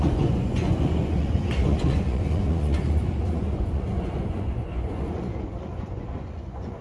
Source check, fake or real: fake